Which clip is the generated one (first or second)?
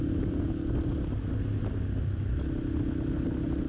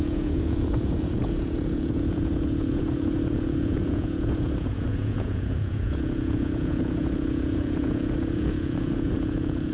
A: second